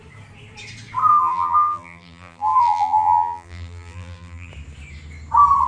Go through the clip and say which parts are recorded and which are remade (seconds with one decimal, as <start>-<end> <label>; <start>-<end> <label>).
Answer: 0.0-1.1 recorded; 1.1-4.5 remade; 4.5-5.7 recorded